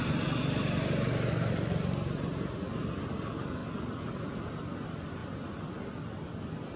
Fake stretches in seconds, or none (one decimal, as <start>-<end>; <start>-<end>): 5.2-5.8